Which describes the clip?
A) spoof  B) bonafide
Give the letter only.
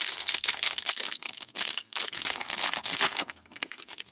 A